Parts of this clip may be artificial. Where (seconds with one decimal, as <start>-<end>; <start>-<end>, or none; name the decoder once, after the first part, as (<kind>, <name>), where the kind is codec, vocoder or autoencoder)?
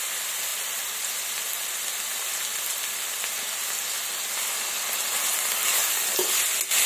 none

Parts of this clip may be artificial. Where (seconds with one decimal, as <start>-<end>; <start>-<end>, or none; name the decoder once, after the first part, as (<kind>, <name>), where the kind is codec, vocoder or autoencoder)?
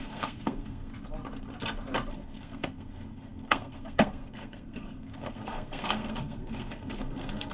0.0-0.9 (codec, SNAC); 2.1-7.5